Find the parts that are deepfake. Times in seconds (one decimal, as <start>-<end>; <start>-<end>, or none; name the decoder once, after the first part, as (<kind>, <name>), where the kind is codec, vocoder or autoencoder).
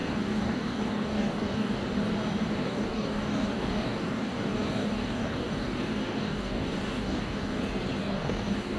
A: 0.0-1.8 (codec, DAC); 2.6-7.6; 8.0-8.8